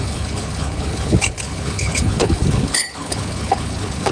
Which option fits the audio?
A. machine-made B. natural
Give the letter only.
A